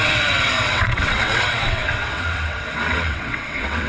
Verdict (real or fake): fake